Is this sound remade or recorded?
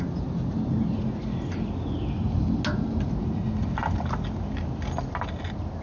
recorded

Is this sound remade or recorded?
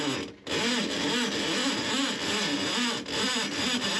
recorded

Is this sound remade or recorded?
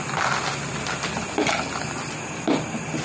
recorded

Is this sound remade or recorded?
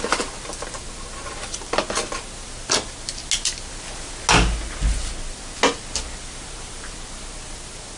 recorded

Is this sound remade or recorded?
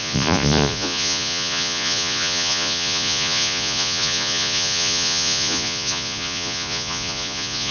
remade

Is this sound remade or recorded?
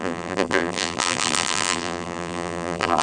remade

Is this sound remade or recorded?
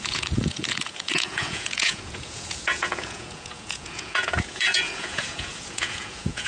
remade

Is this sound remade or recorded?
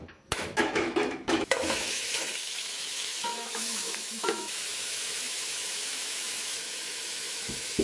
remade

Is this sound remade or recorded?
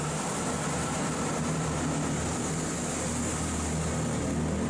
recorded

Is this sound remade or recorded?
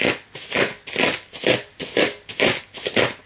recorded